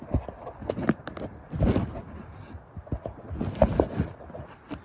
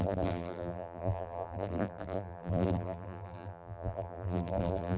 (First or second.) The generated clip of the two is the second